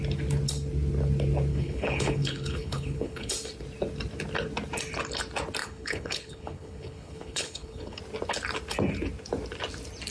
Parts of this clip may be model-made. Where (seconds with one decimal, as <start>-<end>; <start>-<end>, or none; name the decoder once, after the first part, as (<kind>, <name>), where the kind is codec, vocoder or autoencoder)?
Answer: 1.5-3.3 (codec, HILCodec); 5.6-8.0